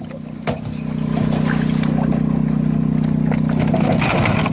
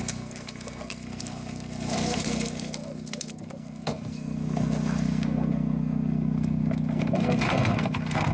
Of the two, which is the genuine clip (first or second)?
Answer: first